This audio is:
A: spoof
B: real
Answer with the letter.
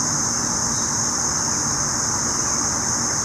B